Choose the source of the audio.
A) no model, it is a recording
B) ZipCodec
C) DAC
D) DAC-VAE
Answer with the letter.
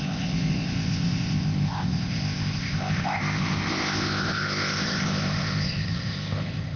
B